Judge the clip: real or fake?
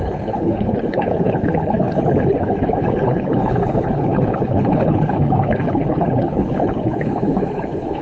fake